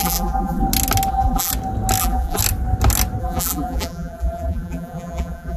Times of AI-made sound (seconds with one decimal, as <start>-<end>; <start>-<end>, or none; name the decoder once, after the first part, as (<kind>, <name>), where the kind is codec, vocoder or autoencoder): 0.0-0.6 (vocoder, BigVGAN v2); 1.1-1.5; 2.0-2.4; 3.2-5.6